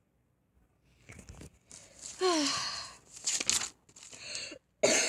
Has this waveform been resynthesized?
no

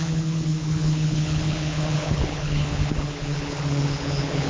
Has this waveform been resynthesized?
yes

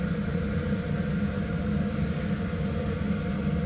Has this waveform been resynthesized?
no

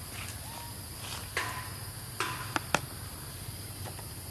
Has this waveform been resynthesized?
no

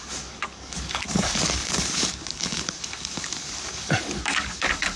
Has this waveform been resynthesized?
yes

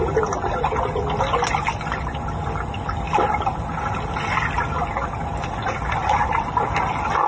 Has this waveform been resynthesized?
no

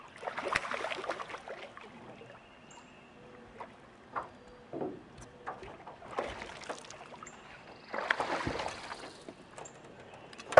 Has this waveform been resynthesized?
no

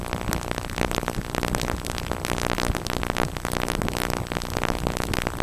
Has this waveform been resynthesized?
no